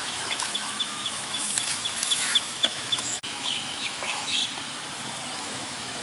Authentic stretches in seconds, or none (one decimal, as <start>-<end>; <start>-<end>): 4.4-5.4